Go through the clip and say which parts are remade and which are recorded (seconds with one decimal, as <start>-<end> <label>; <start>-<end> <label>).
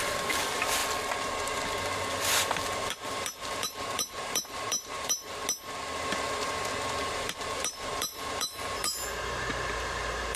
0.0-0.8 remade; 0.8-2.1 recorded; 2.1-5.4 remade; 5.4-7.0 recorded; 7.0-10.4 remade